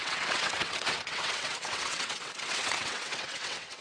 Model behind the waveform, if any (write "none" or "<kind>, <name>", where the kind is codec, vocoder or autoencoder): vocoder, WaveNeXt